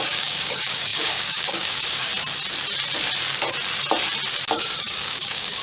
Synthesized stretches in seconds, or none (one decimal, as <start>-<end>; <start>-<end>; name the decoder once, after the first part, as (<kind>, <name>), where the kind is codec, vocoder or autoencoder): 0.0-2.1 (codec, DAC); 4.5-5.6